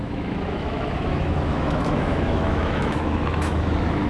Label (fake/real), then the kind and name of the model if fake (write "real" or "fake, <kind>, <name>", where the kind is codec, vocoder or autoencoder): fake, autoencoder, DAC-VAE